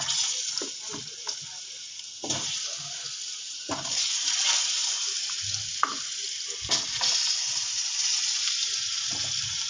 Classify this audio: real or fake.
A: real